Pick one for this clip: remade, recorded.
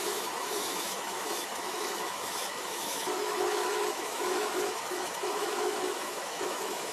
remade